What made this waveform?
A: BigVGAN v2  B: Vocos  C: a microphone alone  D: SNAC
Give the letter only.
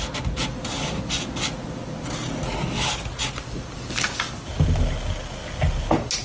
C